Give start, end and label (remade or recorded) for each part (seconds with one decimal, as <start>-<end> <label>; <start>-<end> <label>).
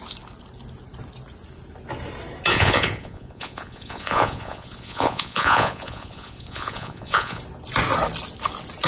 0.0-2.5 recorded; 2.5-7.4 remade; 7.4-8.9 recorded